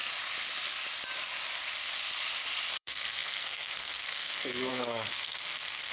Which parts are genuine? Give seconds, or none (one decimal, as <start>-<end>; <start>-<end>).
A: 0.0-2.7